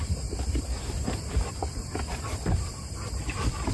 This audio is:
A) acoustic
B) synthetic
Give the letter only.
B